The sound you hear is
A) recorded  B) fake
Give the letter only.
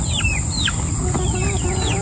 A